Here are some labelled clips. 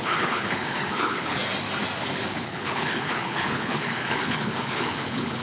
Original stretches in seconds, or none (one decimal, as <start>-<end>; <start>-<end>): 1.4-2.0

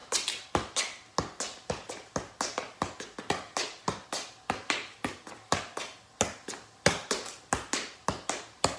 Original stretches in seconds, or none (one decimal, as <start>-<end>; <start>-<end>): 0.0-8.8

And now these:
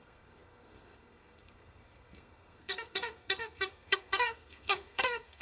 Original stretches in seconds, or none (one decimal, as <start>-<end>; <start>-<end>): none

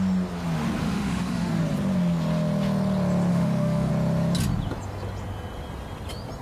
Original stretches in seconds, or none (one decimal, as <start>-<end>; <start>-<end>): 0.0-0.8; 1.6-3.3; 3.9-6.4